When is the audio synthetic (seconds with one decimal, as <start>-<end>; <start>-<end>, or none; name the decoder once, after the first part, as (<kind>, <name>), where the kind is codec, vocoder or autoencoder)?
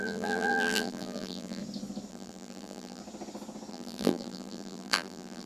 0.0-1.6 (vocoder, BigVGAN v2); 2.1-3.0; 3.7-5.5